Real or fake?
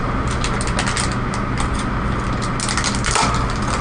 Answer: real